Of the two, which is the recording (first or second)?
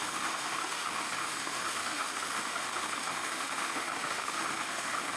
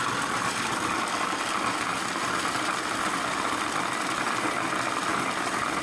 second